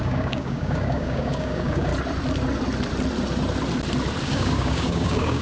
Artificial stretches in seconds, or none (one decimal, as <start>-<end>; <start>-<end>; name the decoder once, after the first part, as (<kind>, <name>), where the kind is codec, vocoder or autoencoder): 0.0-1.9 (codec, DAC); 4.2-5.4